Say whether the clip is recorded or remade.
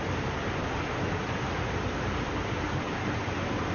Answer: recorded